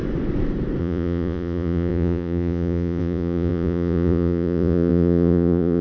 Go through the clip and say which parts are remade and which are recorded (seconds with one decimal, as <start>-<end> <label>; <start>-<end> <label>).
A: 0.0-0.8 recorded; 0.8-5.8 remade